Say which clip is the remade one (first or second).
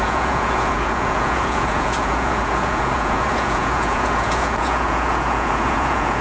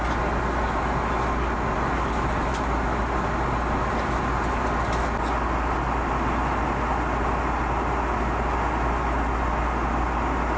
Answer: first